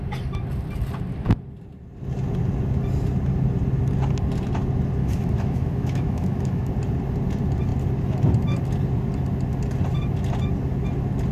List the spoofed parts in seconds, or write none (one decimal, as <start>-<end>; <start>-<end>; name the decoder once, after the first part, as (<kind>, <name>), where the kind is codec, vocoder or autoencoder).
5.0-6.7 (autoencoder, DAC-VAE)